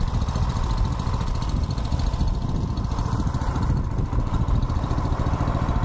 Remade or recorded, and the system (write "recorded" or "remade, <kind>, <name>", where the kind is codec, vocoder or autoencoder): recorded